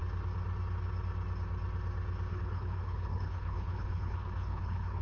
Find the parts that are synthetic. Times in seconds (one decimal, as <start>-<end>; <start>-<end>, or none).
2.3-5.0